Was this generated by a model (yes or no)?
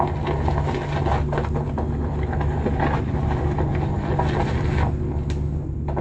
no